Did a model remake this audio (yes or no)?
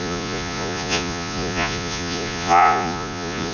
yes